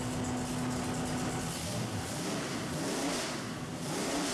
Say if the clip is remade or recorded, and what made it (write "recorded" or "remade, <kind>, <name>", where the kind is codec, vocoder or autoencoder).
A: recorded